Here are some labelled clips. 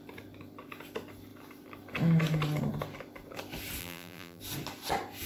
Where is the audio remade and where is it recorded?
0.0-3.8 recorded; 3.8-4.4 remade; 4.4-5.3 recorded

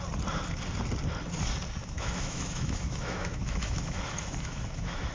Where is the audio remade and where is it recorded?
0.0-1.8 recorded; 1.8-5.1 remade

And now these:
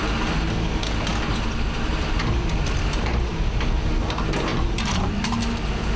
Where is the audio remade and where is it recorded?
0.0-4.5 recorded; 4.5-5.1 remade; 5.1-6.0 recorded

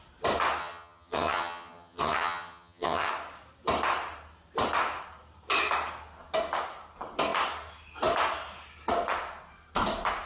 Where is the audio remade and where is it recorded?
0.0-0.6 recorded; 0.6-3.1 remade; 3.1-10.3 recorded

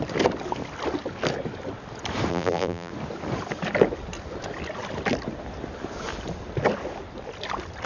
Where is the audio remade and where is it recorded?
0.0-2.3 recorded; 2.3-2.9 remade; 2.9-7.9 recorded

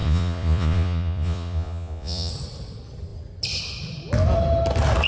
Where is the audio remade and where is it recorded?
0.0-2.3 remade; 2.3-5.1 recorded

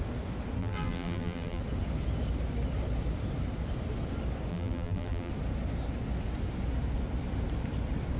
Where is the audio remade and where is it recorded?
0.0-0.6 recorded; 0.6-1.6 remade; 1.6-4.5 recorded; 4.5-5.3 remade; 5.3-8.2 recorded

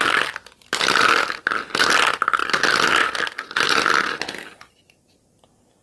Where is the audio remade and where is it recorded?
0.0-2.4 recorded; 2.4-4.0 remade; 4.0-5.8 recorded